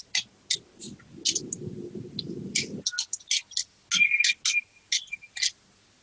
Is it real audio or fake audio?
real